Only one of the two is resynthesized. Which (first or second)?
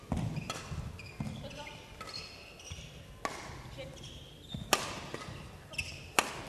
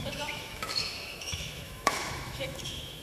second